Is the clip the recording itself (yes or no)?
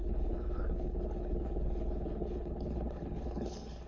no